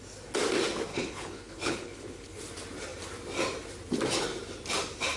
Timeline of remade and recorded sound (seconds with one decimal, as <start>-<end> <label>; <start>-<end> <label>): 0.0-0.9 recorded; 0.9-2.4 remade; 2.4-5.2 recorded